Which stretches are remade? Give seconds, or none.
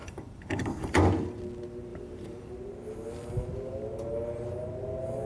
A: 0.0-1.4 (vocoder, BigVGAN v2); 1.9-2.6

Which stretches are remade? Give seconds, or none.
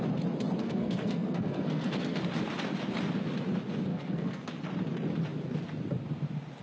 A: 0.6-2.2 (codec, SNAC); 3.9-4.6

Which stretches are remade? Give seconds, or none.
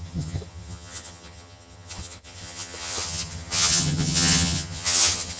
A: 0.0-5.4 (vocoder, HiFi-GAN)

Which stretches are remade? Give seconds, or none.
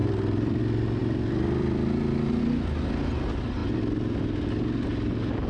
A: 0.0-0.6 (vocoder, BigVGAN v2); 1.0-2.4